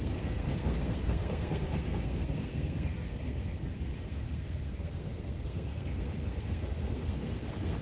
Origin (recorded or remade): remade